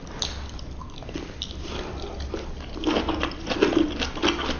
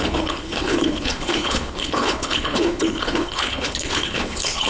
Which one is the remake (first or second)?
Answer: second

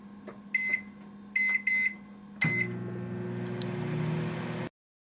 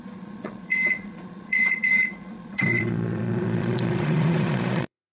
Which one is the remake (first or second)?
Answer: second